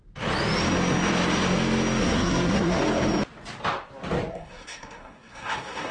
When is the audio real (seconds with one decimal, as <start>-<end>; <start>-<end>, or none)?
0.0-2.0; 2.8-4.3